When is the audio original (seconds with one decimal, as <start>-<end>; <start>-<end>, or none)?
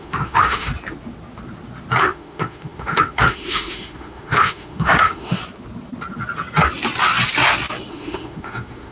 0.7-2.0; 5.4-7.9